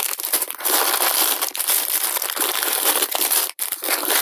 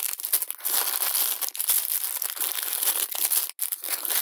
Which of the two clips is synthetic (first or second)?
first